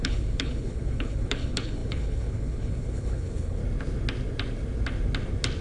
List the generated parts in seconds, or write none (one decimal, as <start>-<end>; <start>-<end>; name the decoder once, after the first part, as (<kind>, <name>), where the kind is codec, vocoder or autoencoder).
0.0-3.6 (codec, HILCodec)